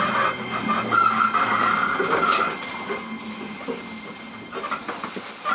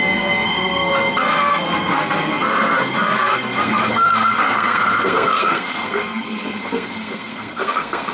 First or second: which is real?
first